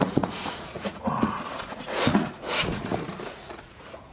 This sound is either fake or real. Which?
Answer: fake